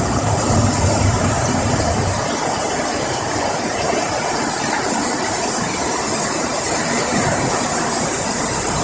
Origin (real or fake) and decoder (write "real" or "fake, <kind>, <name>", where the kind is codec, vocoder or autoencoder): fake, vocoder, BigVGAN v2